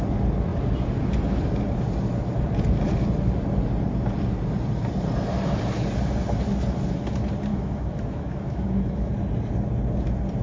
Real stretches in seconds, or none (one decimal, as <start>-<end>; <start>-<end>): 0.0-7.5; 9.1-10.4